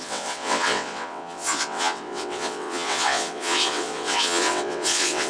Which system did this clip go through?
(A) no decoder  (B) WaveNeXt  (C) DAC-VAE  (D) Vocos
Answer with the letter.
B